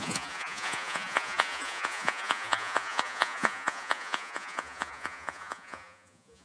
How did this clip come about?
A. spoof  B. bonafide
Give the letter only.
A